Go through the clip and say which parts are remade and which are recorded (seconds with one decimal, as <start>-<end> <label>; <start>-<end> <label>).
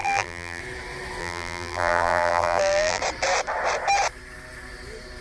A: 0.0-0.6 remade; 0.6-1.2 recorded; 1.2-3.0 remade; 3.0-5.2 recorded